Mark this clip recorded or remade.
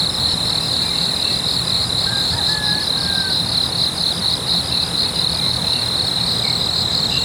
recorded